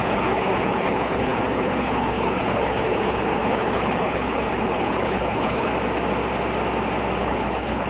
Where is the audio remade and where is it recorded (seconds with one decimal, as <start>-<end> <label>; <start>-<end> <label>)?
0.0-5.7 remade; 5.7-7.2 recorded; 7.2-7.9 remade